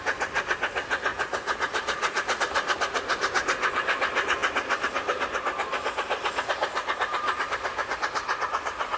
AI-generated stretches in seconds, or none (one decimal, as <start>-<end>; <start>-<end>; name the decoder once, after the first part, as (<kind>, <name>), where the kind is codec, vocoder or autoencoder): 1.1-2.4 (vocoder, Vocos)